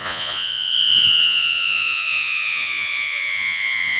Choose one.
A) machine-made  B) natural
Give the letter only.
A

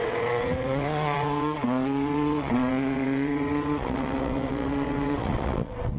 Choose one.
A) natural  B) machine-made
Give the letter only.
B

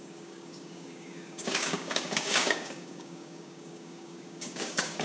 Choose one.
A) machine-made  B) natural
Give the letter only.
A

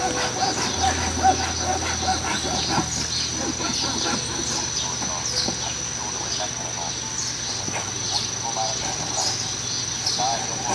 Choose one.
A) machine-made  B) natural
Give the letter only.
B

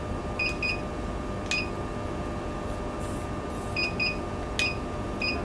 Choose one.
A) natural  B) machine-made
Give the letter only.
A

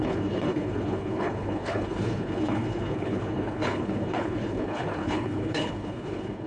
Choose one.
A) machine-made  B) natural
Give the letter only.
A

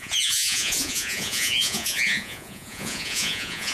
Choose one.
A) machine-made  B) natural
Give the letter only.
A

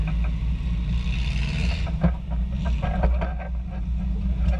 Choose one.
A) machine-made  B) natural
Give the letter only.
B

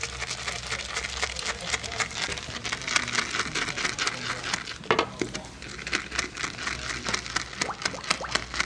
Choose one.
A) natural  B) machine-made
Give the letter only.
A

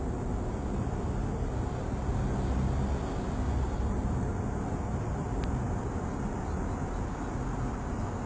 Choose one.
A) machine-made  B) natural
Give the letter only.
B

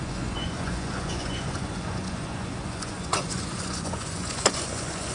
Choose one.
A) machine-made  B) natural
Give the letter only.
A